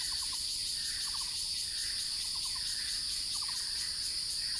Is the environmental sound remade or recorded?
recorded